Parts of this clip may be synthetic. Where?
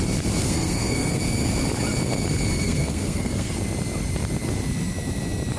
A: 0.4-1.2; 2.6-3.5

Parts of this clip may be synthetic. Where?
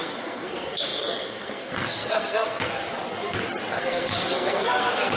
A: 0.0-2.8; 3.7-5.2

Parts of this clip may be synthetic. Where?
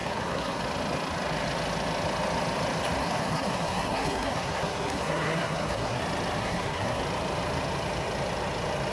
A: 0.0-0.6; 3.0-6.0; 6.4-7.0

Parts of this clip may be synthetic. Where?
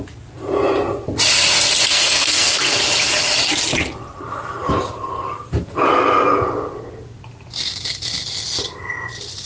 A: 1.9-2.8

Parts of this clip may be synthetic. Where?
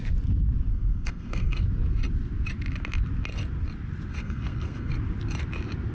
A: 0.7-1.6; 4.2-4.9